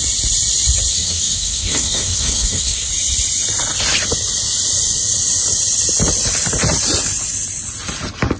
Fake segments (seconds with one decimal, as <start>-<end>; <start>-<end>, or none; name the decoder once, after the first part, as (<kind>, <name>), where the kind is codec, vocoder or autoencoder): 0.9-2.9 (codec, SNAC)